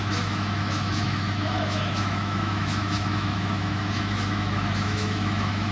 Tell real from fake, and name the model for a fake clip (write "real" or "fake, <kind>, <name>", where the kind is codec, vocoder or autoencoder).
fake, autoencoder, DAC-VAE